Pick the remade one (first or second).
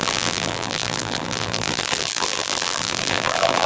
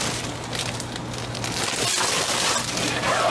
first